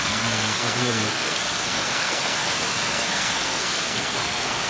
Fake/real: fake